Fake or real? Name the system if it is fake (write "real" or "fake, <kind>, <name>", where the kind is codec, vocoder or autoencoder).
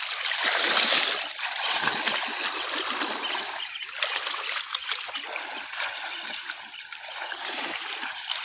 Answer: real